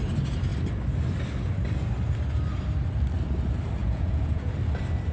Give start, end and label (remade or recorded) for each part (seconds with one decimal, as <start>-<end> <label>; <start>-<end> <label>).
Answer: 0.0-3.8 recorded; 3.8-4.5 remade; 4.5-5.1 recorded